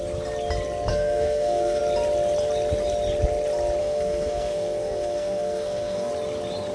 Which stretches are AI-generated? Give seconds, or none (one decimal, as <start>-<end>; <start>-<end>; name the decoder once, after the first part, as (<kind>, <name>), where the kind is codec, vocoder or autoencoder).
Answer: 0.9-1.8 (codec, SNAC); 3.8-6.1